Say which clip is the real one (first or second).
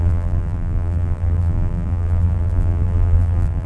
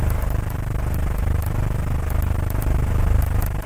second